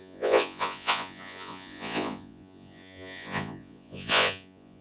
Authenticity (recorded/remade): remade